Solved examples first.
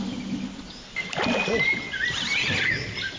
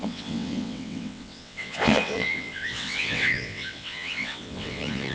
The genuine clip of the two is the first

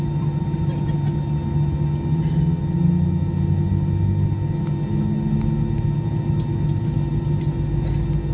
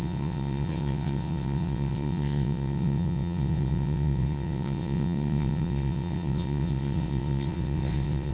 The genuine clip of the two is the first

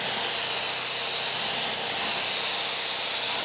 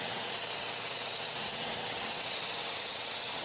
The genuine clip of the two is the first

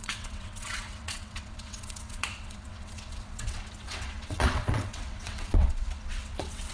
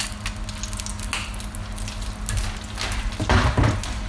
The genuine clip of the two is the second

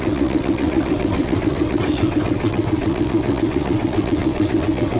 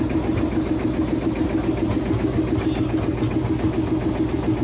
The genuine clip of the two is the second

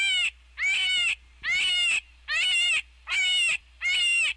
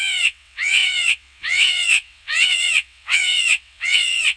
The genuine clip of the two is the first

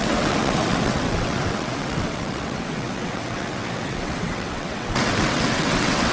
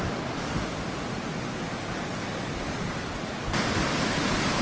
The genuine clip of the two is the second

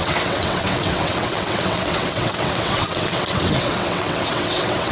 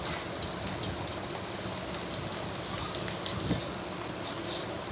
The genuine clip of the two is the second